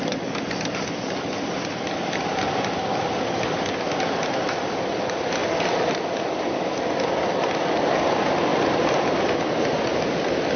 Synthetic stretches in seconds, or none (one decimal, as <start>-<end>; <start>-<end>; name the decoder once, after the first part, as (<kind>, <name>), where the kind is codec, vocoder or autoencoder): none